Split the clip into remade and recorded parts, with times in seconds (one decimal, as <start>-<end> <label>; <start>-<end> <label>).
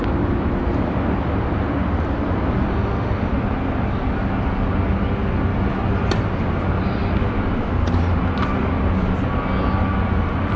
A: 0.0-2.7 recorded; 2.7-3.3 remade; 3.3-10.6 recorded